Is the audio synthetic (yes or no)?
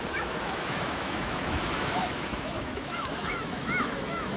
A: yes